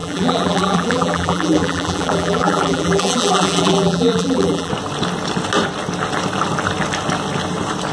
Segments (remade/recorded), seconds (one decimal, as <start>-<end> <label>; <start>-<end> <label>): 0.0-4.7 remade; 4.7-7.9 recorded